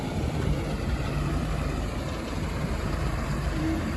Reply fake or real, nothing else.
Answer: fake